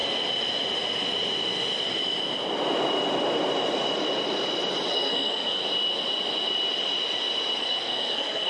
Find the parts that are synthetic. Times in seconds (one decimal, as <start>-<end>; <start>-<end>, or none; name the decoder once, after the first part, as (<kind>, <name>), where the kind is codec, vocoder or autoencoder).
4.9-5.6 (codec, SNAC); 7.6-8.5